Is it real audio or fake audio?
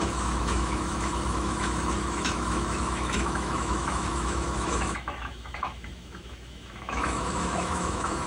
fake